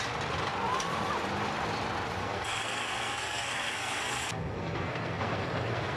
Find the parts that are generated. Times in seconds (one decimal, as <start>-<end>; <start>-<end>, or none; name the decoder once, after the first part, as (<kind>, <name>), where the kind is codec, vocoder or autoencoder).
2.2-6.0 (codec, SNAC)